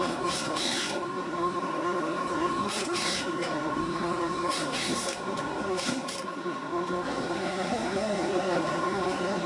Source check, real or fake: fake